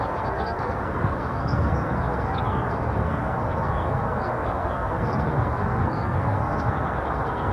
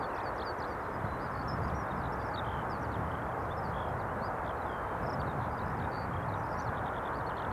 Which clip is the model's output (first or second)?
first